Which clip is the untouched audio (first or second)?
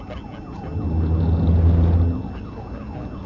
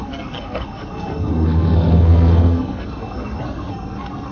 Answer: first